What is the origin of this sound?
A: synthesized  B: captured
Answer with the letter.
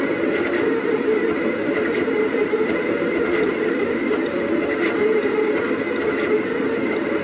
B